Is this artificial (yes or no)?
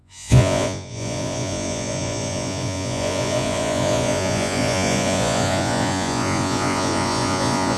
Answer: yes